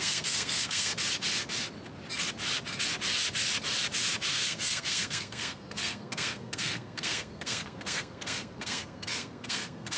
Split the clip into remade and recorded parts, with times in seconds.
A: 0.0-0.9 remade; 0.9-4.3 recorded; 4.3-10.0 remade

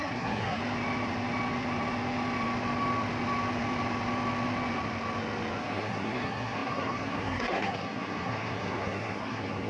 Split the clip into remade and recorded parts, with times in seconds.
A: 0.0-0.6 remade; 0.6-5.6 recorded; 5.6-9.7 remade

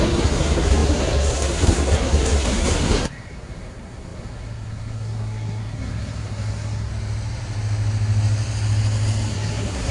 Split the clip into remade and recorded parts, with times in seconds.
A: 0.0-6.9 remade; 6.9-9.3 recorded; 9.3-9.9 remade

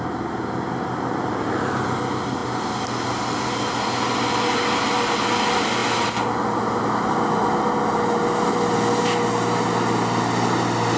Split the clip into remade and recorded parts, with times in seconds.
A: 0.0-11.0 recorded

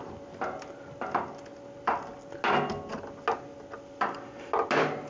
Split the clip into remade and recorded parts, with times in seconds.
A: 0.0-5.1 recorded